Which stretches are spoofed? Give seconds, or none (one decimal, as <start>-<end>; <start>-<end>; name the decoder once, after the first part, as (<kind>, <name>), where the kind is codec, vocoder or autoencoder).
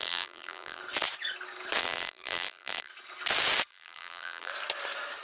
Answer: 0.0-0.8 (vocoder, BigVGAN v2); 1.8-2.9; 3.7-4.5